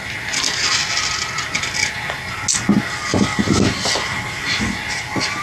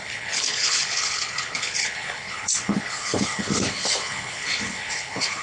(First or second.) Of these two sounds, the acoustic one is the first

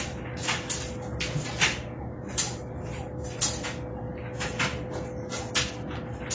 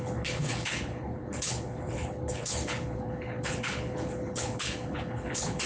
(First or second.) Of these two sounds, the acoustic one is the first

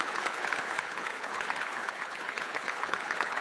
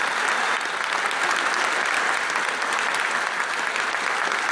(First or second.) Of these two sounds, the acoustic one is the second